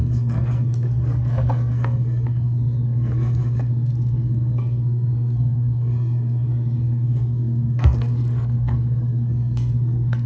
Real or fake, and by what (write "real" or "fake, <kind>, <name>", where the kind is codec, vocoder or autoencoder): fake, codec, SNAC